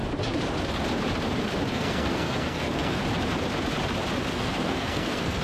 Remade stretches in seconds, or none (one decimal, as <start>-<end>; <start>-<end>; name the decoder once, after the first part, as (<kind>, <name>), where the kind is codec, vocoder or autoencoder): 1.7-3.0 (codec, SNAC); 4.3-5.4